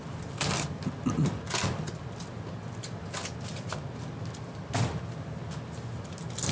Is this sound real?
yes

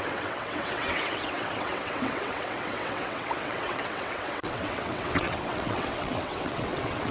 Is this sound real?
no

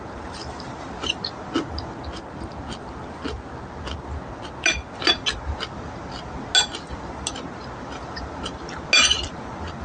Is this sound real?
yes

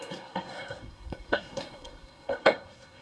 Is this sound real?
no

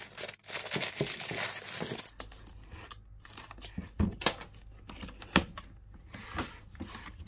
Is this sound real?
yes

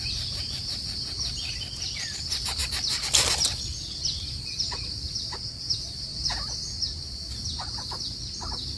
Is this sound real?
yes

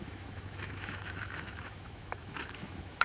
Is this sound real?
no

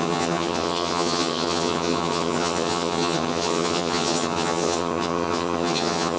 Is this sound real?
no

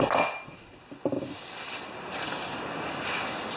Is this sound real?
yes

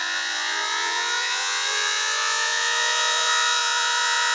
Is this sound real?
no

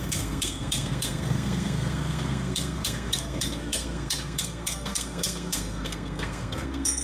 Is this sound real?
no